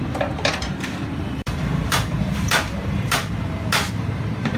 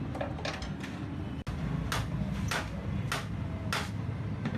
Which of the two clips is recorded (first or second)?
second